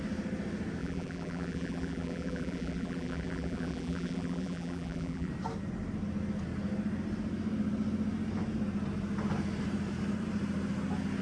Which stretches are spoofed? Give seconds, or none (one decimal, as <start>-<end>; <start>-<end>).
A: 0.8-5.3